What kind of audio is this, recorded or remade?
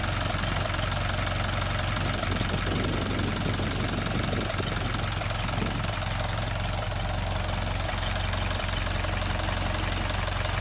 recorded